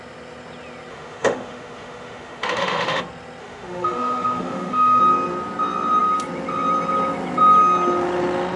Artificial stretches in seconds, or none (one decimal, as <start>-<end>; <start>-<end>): 0.9-3.0; 3.4-5.0